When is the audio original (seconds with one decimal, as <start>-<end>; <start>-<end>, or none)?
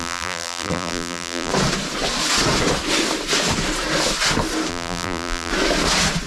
1.5-4.7; 5.5-6.3